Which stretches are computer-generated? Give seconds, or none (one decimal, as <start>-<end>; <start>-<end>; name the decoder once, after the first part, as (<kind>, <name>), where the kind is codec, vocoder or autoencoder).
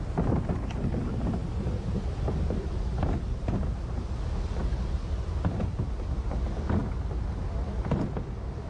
1.4-3.4 (vocoder, BigVGAN v2); 4.6-6.3